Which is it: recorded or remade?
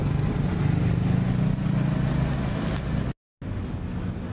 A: recorded